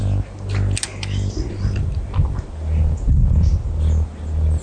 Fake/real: real